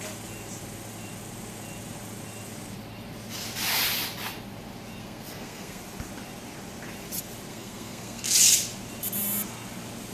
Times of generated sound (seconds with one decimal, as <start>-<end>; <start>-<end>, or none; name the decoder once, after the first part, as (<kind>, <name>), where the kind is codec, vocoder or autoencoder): 5.0-5.8 (codec, SNAC); 7.5-8.2